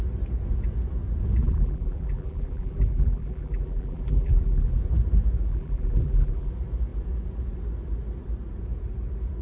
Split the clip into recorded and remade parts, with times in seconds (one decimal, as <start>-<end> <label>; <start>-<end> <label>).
0.0-1.4 recorded; 1.4-4.8 remade; 4.8-5.5 recorded; 5.5-6.5 remade; 6.5-9.4 recorded